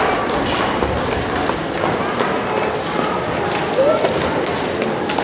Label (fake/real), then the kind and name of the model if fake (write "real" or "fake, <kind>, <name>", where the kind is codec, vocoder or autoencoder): real